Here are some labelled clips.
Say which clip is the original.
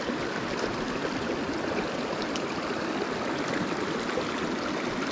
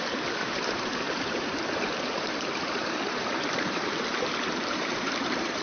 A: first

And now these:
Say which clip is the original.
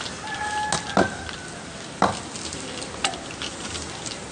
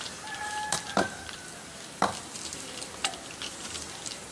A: first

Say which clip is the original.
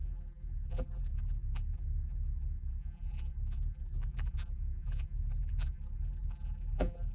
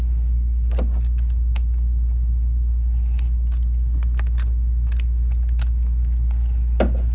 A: second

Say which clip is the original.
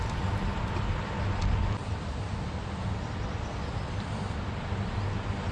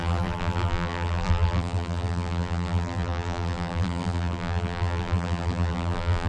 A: first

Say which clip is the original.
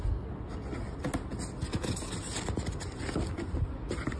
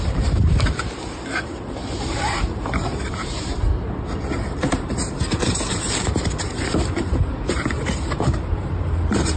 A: first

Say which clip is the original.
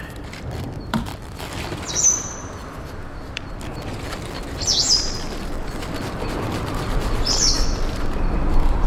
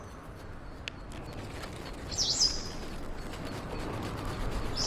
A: second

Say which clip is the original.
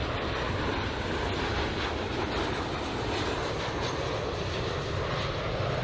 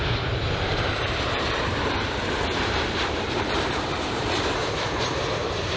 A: first